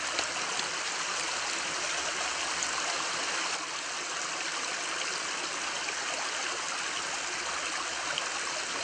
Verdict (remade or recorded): recorded